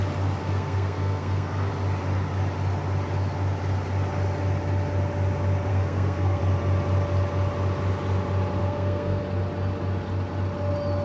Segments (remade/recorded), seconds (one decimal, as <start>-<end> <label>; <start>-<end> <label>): 0.0-0.4 recorded; 0.4-1.7 remade; 1.7-5.7 recorded; 5.7-6.4 remade; 6.4-8.6 recorded; 8.6-9.2 remade; 9.2-11.0 recorded